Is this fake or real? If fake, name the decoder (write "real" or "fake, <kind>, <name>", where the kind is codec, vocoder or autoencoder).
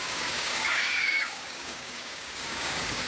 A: fake, codec, DAC